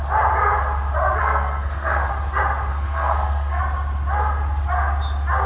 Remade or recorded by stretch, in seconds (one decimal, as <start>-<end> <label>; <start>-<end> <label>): 0.0-1.2 recorded; 1.2-2.1 remade; 2.1-2.7 recorded; 2.7-3.6 remade; 3.6-5.5 recorded